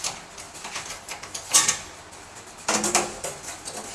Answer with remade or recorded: recorded